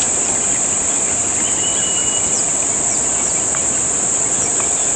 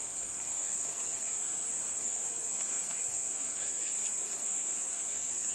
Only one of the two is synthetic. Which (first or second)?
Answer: second